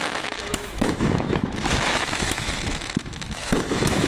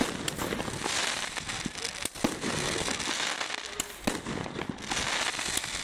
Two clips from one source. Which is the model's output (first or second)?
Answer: first